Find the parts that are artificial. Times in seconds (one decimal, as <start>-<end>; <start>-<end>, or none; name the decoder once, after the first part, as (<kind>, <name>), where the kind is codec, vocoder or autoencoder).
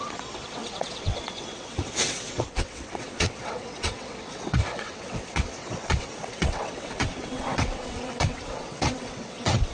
0.0-9.7 (vocoder, WaveNeXt)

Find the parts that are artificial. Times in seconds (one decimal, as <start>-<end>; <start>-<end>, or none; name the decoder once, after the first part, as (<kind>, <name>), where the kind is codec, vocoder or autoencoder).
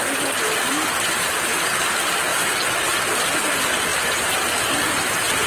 none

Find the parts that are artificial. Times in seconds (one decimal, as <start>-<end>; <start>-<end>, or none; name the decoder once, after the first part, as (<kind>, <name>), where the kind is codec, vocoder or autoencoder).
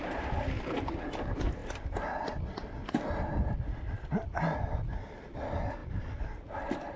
none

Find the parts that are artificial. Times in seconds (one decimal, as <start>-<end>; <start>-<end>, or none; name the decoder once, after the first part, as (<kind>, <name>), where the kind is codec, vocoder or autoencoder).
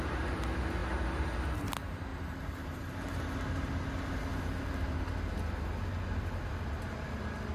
2.1-3.3 (vocoder, BigVGAN v2)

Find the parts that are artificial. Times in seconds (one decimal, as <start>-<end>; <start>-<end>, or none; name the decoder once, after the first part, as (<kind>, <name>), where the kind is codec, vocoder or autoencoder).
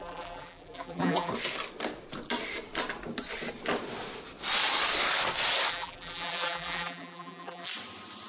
0.0-1.3 (vocoder, BigVGAN v2); 5.7-7.7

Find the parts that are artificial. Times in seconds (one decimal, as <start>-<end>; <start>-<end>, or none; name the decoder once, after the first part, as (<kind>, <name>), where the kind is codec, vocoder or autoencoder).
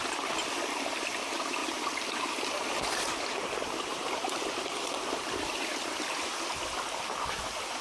1.6-2.4 (vocoder, BigVGAN v2); 3.9-6.1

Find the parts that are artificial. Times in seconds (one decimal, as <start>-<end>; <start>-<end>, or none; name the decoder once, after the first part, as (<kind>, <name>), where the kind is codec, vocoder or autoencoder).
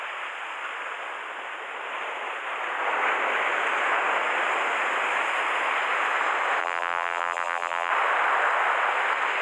6.6-7.9 (vocoder, BigVGAN v2)